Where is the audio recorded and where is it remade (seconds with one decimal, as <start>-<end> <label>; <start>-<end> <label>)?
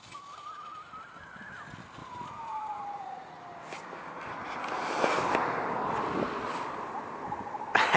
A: 0.0-2.0 recorded; 2.0-3.3 remade; 3.3-8.0 recorded